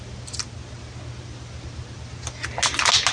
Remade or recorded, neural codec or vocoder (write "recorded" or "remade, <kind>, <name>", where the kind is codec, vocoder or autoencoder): recorded